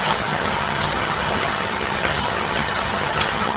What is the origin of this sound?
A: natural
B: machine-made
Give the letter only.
B